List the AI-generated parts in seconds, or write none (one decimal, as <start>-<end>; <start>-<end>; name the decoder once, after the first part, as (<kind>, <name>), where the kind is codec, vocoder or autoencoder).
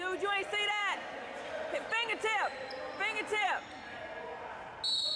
3.3-4.0 (vocoder, BigVGAN v2)